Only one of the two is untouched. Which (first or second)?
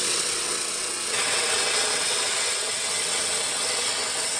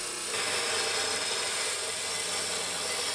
second